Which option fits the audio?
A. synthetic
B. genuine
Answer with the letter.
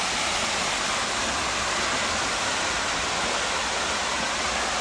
B